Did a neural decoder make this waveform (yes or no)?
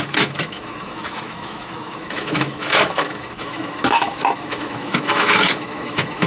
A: yes